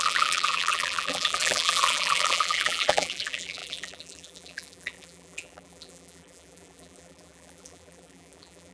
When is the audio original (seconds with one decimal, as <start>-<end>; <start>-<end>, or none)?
none